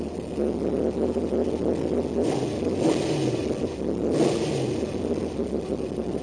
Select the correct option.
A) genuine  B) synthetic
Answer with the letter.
A